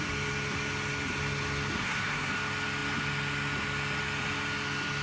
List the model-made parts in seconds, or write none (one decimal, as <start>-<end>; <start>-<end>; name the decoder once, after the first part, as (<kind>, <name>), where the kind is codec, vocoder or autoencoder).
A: 1.8-2.3 (codec, SNAC)